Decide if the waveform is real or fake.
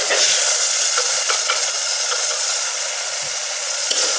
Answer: fake